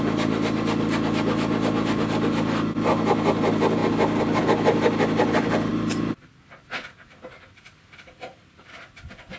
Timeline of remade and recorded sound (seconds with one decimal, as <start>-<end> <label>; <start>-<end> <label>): 0.0-5.7 recorded; 5.7-6.3 remade; 6.3-9.4 recorded